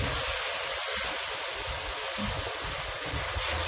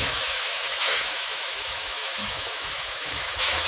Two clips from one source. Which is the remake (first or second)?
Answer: second